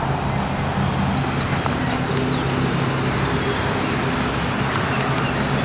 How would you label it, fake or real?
real